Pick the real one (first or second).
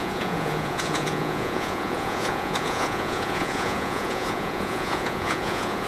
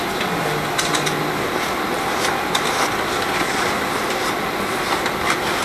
second